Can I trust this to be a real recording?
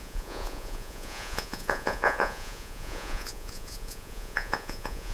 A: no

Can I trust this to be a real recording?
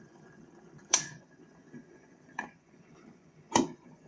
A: no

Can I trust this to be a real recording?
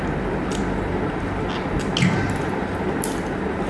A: yes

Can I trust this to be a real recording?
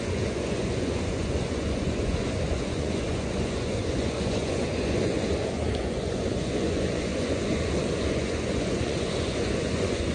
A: no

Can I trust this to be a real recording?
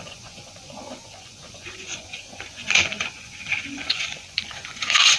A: no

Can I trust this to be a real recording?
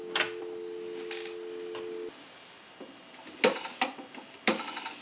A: yes